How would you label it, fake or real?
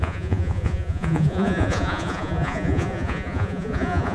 fake